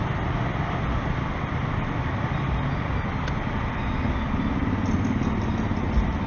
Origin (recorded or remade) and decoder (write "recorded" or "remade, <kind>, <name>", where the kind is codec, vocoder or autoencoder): recorded